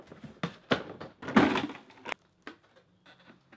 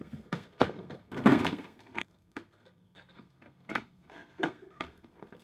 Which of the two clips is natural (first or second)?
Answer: first